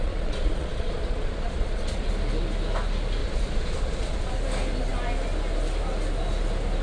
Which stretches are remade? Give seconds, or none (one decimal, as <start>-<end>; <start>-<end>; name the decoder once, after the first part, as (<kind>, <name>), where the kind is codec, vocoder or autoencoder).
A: 0.0-2.1 (vocoder, Vocos); 3.2-4.3